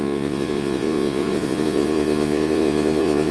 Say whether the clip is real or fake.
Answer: fake